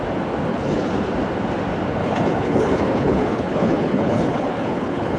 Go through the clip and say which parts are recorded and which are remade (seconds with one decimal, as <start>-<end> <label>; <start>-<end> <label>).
0.0-0.5 recorded; 0.5-1.1 remade; 1.1-2.0 recorded; 2.0-5.2 remade